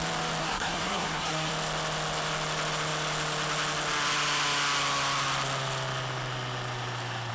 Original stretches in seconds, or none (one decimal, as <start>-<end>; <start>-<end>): 0.0-0.4; 1.5-7.3